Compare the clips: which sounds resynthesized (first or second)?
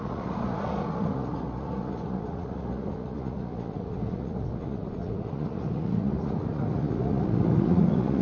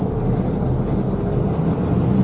first